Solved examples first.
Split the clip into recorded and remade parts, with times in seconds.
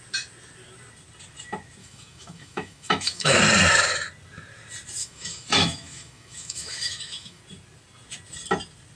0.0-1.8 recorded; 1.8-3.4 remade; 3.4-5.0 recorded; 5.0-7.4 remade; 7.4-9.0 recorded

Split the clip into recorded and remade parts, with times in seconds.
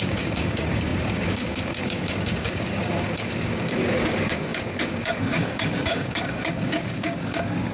0.0-7.7 remade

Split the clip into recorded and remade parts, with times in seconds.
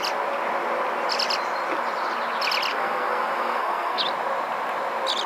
0.0-2.7 recorded; 2.7-4.0 remade; 4.0-5.3 recorded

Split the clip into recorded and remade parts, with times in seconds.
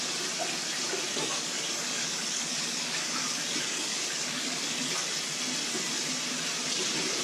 0.0-1.1 recorded; 1.1-4.9 remade; 4.9-7.2 recorded